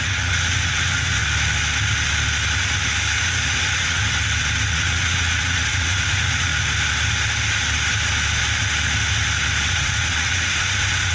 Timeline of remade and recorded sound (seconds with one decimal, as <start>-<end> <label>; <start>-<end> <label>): 0.0-1.2 remade; 1.2-3.2 recorded; 3.2-4.0 remade; 4.0-4.7 recorded; 4.7-6.5 remade; 6.5-9.7 recorded; 9.7-11.1 remade